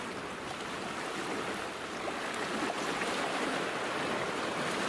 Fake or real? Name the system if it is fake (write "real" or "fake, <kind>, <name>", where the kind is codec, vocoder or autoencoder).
real